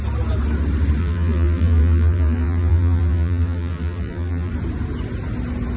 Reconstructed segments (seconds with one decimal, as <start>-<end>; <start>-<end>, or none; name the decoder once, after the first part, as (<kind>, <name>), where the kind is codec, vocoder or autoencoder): 1.0-4.5 (vocoder, BigVGAN v2)